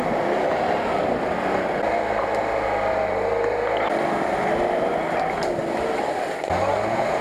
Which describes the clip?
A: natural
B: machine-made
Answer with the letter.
A